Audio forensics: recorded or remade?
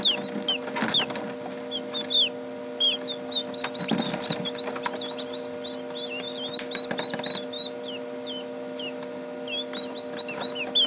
recorded